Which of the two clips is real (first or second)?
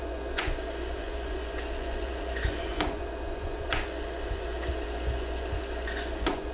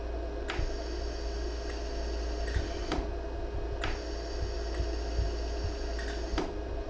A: second